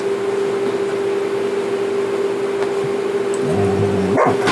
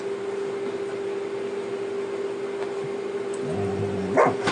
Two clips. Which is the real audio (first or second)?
first